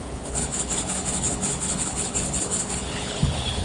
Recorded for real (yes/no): no